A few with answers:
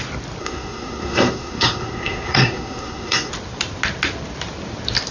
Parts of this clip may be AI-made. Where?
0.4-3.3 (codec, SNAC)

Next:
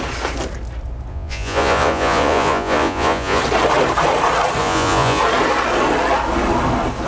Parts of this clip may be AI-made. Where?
1.1-3.4 (vocoder, Vocos); 4.6-5.2